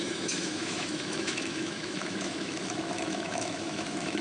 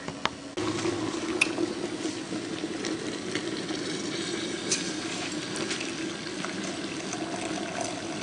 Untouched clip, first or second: second